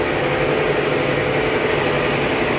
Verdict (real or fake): real